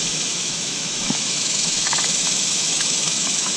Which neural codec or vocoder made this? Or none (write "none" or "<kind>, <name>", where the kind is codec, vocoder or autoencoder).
autoencoder, DAC-VAE